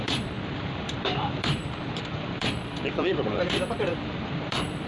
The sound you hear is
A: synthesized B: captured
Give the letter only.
A